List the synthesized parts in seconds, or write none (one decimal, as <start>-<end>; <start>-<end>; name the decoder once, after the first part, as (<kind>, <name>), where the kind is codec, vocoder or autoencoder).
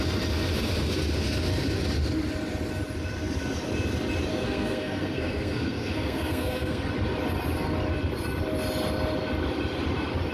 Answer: 4.3-6.8 (codec, SNAC)